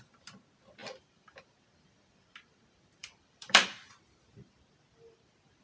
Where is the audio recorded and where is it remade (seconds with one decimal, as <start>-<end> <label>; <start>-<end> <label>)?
0.0-0.8 recorded; 0.8-1.4 remade; 1.4-3.0 recorded; 3.0-3.9 remade; 3.9-5.6 recorded